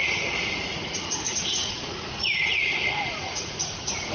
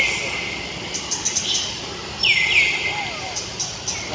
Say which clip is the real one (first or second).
second